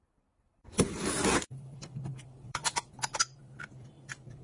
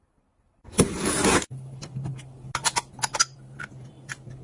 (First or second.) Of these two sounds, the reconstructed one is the first